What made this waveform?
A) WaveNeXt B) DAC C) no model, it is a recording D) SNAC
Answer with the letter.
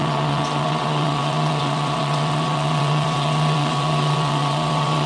A